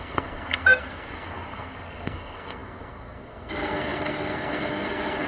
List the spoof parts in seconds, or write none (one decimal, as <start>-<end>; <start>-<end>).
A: 0.0-5.3